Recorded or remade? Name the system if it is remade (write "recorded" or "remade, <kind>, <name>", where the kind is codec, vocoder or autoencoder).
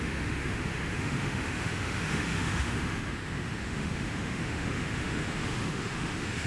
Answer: remade, autoencoder, DAC-VAE